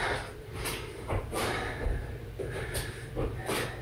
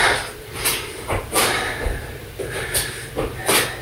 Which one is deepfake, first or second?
second